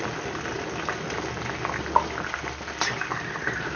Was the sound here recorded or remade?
recorded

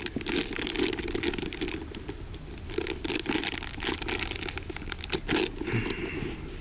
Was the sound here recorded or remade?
recorded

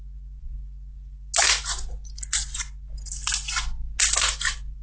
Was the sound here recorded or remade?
recorded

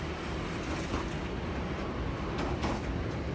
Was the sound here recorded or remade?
recorded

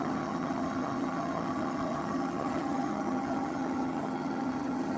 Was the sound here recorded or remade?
remade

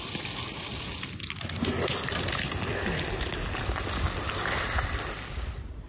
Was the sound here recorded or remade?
recorded